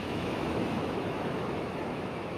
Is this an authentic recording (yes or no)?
no